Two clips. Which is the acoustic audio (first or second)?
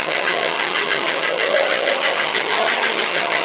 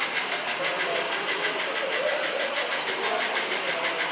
second